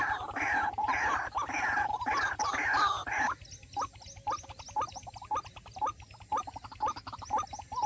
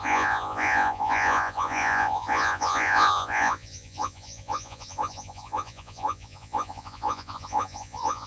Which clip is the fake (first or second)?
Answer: second